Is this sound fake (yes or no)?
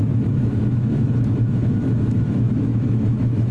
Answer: yes